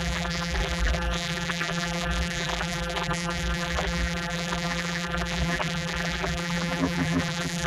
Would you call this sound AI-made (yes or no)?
yes